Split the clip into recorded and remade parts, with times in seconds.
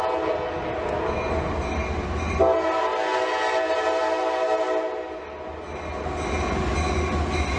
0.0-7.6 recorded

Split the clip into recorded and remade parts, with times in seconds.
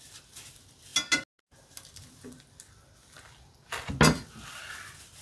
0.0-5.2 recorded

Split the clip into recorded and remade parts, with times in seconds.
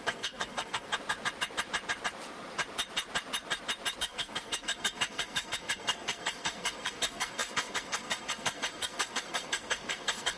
0.0-0.9 remade; 0.9-4.0 recorded; 4.0-10.4 remade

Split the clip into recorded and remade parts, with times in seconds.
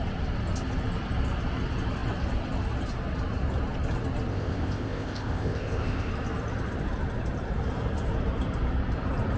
0.0-4.3 recorded; 4.3-6.1 remade; 6.1-9.4 recorded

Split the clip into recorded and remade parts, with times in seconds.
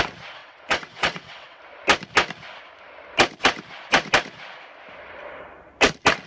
0.0-0.4 recorded; 0.4-1.6 remade; 1.6-6.3 recorded